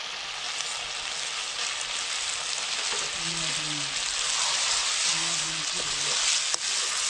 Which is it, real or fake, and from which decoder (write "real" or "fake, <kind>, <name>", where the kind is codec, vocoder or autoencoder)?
real